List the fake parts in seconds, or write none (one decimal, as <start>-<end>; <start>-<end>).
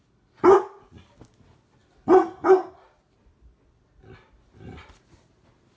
none